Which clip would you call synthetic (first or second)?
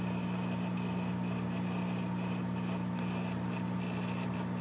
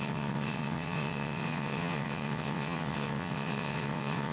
second